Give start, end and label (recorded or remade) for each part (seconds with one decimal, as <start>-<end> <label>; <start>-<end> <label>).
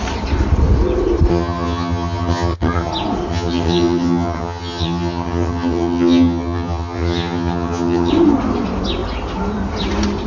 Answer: 0.0-1.3 recorded; 1.3-2.9 remade; 2.9-3.3 recorded; 3.3-8.1 remade; 8.1-10.3 recorded